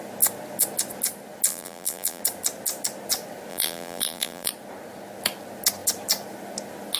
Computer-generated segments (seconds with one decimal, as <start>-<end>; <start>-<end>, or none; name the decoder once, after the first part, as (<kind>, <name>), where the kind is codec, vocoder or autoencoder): 1.5-2.2 (vocoder, BigVGAN v2); 3.5-4.5